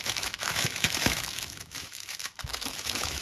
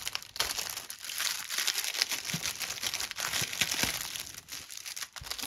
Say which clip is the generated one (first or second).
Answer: first